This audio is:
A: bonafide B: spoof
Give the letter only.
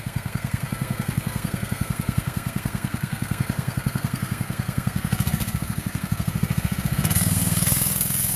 B